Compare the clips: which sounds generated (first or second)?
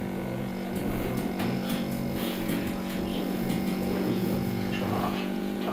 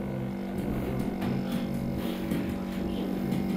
first